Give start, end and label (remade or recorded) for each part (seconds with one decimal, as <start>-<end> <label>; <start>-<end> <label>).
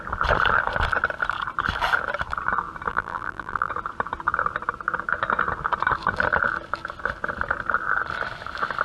0.0-2.9 recorded; 2.9-3.7 remade; 3.7-8.8 recorded